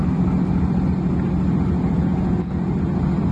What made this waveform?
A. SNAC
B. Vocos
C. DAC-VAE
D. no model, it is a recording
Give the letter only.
D